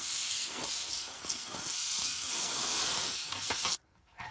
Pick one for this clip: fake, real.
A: fake